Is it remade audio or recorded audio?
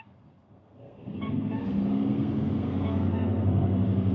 remade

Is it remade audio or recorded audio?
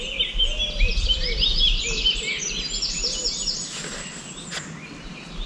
recorded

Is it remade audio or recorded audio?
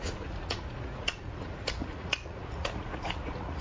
remade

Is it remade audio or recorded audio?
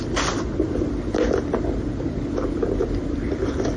recorded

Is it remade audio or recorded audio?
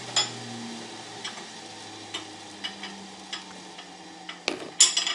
recorded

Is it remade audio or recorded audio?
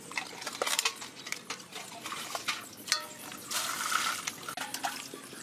recorded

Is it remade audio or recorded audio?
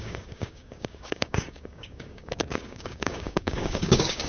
remade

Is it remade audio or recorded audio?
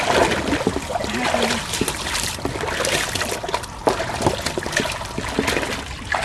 recorded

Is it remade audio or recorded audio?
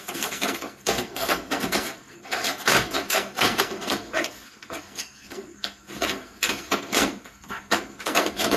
remade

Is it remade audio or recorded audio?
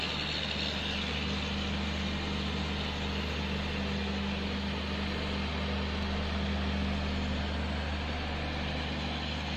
recorded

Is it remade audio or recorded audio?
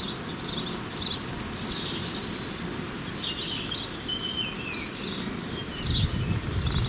recorded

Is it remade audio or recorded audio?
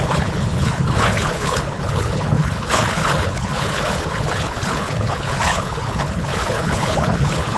remade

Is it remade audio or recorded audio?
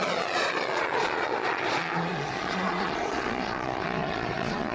remade